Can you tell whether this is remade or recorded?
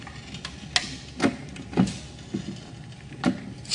recorded